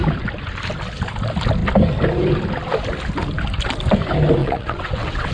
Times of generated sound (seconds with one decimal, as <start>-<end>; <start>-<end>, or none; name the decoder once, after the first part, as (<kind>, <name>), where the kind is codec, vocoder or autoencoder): 4.4-5.3 (vocoder, WaveNeXt)